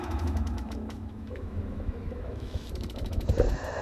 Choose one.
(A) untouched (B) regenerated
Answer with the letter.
B